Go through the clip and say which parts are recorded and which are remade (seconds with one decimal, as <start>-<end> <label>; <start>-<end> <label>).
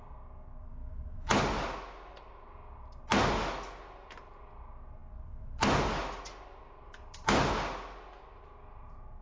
0.0-9.2 recorded